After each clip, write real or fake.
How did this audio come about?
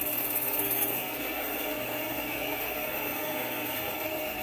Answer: fake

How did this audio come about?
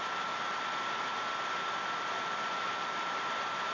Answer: real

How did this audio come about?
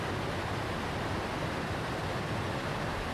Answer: real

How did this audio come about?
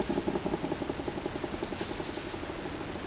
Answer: real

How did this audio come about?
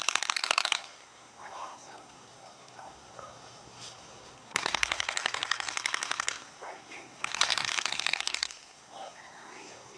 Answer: fake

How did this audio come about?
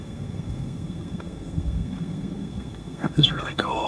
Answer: fake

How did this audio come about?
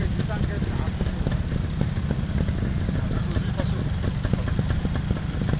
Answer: real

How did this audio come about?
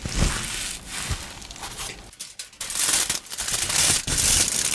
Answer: real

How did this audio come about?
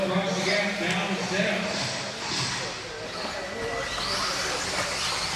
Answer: real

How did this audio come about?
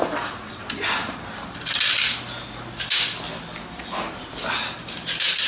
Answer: real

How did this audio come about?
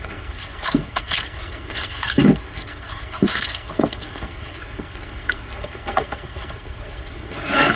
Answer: fake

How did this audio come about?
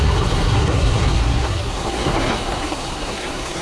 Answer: fake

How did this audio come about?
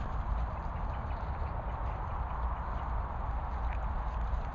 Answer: real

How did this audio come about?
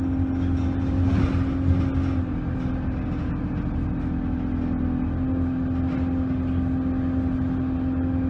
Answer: real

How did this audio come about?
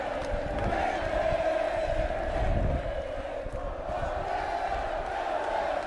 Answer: real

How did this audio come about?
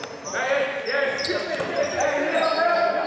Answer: real